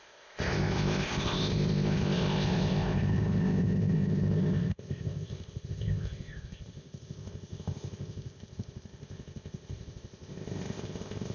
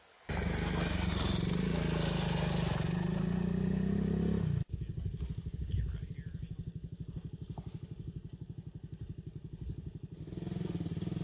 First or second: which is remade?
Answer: first